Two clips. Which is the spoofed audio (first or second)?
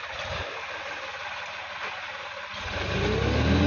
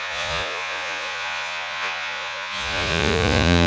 second